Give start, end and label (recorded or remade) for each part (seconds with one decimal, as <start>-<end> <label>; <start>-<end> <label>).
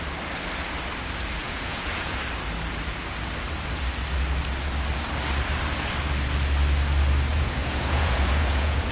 0.0-1.4 recorded; 1.4-2.2 remade; 2.2-7.3 recorded; 7.3-8.9 remade